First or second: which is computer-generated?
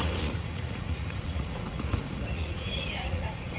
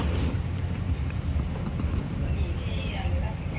first